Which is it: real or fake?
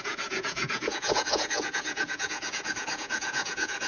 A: fake